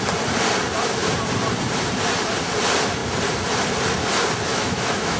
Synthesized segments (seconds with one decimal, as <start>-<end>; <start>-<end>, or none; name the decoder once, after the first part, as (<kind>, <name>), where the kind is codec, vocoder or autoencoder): 4.5-5.2 (autoencoder, DAC-VAE)